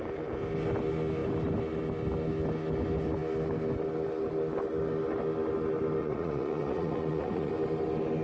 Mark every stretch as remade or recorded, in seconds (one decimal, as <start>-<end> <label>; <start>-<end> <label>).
0.0-6.0 recorded; 6.0-7.5 remade; 7.5-8.2 recorded